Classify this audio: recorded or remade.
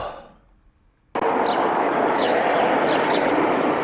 recorded